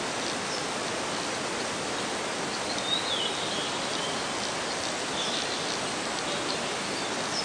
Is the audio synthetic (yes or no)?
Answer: no